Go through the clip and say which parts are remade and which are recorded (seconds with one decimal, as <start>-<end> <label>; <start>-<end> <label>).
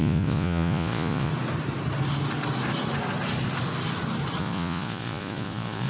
0.0-1.3 remade; 1.3-4.4 recorded; 4.4-5.9 remade